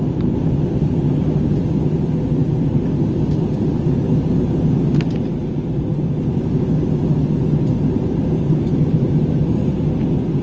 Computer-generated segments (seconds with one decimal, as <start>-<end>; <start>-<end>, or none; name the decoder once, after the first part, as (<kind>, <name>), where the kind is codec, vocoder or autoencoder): none